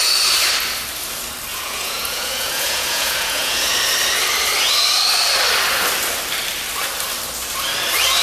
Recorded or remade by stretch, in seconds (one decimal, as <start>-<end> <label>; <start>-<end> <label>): 0.0-1.5 recorded; 1.5-3.7 remade; 3.7-8.2 recorded